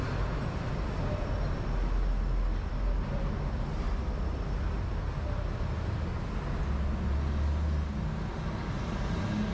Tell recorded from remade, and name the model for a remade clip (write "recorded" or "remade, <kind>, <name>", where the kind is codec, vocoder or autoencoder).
recorded